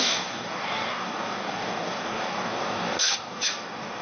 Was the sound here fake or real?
fake